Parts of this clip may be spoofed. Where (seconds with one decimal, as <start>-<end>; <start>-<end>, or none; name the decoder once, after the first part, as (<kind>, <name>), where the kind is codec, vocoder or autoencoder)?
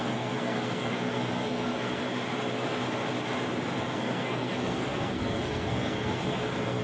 0.0-2.0 (codec, SNAC); 3.8-6.8